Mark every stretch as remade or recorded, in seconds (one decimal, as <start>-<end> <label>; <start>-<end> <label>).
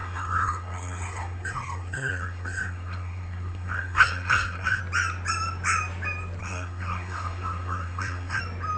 0.0-4.8 remade; 4.8-6.4 recorded; 6.4-8.4 remade; 8.4-8.8 recorded